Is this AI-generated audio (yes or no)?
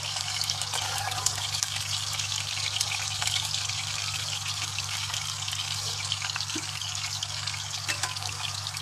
yes